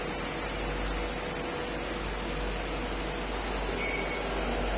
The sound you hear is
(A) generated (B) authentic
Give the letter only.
B